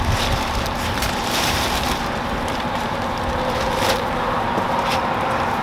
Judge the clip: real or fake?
fake